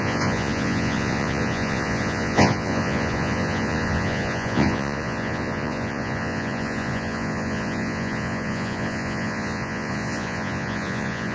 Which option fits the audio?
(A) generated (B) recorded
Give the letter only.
A